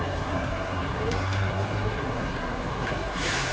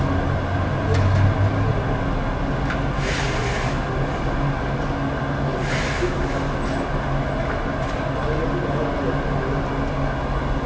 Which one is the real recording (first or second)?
second